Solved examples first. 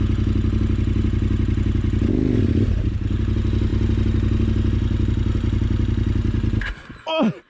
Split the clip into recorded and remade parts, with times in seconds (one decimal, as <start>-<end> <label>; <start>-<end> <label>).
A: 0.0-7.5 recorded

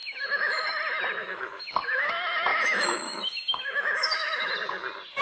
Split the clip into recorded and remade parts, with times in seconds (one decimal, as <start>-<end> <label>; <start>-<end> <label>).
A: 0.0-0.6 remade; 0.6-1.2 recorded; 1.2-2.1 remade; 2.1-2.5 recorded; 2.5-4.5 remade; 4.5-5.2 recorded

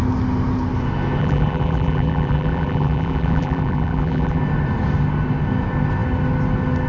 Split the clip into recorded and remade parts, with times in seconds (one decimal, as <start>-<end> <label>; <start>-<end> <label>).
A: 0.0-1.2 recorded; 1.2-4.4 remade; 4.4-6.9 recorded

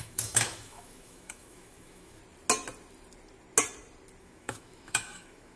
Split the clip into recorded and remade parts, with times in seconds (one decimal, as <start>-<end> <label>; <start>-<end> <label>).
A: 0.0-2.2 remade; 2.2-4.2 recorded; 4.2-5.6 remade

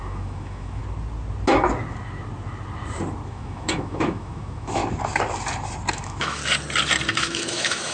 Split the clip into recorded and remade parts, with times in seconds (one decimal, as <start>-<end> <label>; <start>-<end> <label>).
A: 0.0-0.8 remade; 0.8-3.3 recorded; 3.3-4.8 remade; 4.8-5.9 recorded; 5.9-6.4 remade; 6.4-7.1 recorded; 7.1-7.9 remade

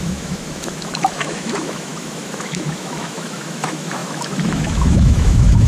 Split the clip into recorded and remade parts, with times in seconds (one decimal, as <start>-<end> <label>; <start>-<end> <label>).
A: 0.0-5.7 remade